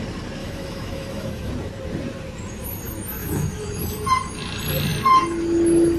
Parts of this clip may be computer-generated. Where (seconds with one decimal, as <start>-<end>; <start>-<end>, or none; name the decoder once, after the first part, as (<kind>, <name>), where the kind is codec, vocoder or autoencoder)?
0.4-1.5 (autoencoder, DAC-VAE); 3.2-3.8